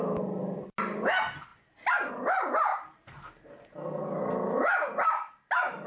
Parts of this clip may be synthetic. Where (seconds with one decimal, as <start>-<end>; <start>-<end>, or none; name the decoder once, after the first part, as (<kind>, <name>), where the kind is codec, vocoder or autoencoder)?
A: none